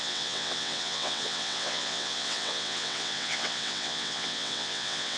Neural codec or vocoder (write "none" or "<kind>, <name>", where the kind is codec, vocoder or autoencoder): vocoder, WaveNeXt